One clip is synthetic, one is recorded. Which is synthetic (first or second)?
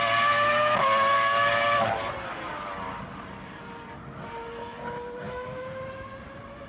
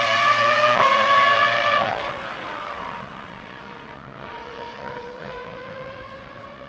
second